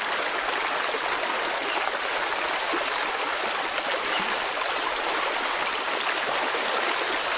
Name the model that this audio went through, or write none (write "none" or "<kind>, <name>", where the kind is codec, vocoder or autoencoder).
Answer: none